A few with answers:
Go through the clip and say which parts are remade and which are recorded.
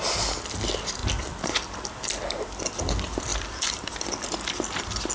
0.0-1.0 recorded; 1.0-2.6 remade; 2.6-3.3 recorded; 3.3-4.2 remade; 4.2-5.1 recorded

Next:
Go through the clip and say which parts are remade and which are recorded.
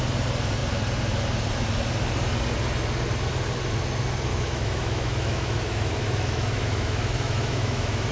0.0-4.3 recorded; 4.3-8.1 remade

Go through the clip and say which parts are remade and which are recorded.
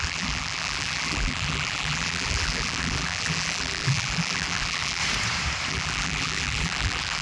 0.0-5.0 remade; 5.0-5.7 recorded; 5.7-7.2 remade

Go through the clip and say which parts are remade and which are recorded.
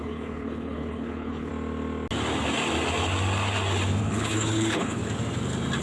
0.0-1.5 remade; 1.5-4.0 recorded; 4.0-5.0 remade; 5.0-5.8 recorded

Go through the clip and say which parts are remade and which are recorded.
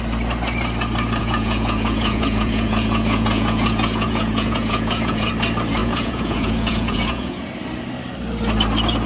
0.0-1.2 recorded; 1.2-5.3 remade; 5.3-5.8 recorded; 5.8-7.5 remade; 7.5-9.1 recorded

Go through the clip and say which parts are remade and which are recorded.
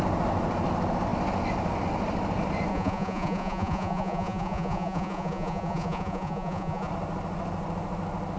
0.0-2.7 recorded; 2.7-6.9 remade; 6.9-8.4 recorded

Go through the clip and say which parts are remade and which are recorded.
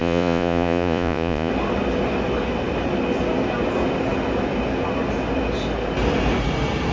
0.0-1.5 remade; 1.5-6.9 recorded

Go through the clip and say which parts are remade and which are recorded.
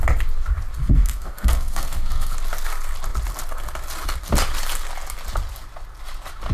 0.0-0.8 recorded; 0.8-2.3 remade; 2.3-6.5 recorded